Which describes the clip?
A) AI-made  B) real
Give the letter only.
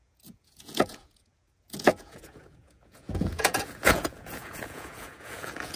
A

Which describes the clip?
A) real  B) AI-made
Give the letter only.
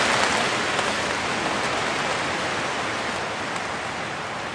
A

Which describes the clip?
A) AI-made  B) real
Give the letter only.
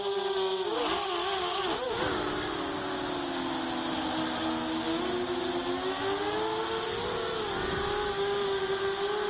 B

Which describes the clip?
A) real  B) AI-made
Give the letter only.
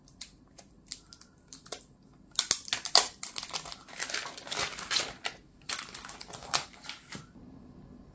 A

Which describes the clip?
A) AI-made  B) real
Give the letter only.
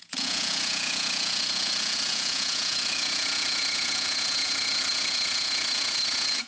A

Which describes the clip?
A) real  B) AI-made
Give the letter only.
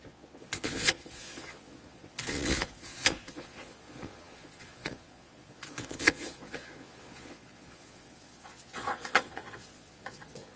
B